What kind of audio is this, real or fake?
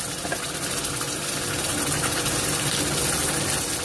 real